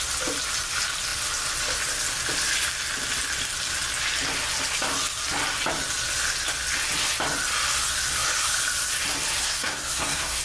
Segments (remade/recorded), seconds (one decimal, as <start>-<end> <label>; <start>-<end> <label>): 0.0-9.4 recorded; 9.4-10.4 remade